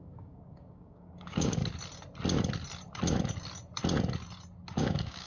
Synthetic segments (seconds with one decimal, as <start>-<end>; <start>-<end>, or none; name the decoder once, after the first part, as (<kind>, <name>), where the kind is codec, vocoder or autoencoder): 0.0-1.6 (codec, DAC); 4.8-5.3